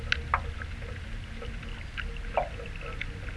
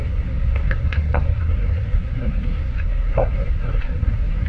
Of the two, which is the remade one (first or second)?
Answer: second